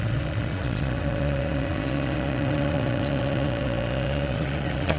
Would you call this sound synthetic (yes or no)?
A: yes